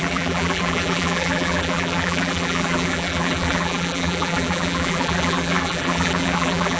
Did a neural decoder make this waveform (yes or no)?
yes